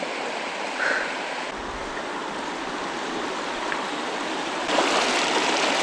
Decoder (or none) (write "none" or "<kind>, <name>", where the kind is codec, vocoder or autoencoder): none